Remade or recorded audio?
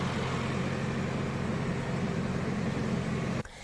recorded